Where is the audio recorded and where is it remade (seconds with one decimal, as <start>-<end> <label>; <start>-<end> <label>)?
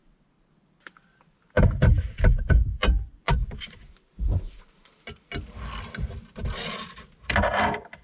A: 0.0-8.0 recorded